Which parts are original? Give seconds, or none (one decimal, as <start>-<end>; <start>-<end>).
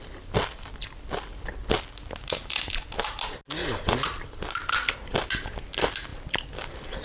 0.0-7.0